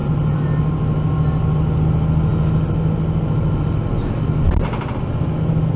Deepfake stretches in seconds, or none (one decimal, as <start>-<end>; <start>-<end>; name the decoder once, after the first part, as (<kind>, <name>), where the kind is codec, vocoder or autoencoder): none